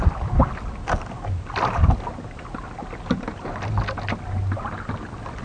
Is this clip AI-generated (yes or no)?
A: no